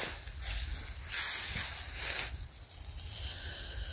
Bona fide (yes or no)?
yes